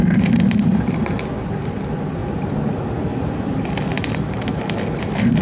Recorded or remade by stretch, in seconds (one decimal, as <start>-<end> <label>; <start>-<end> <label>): 0.0-5.4 recorded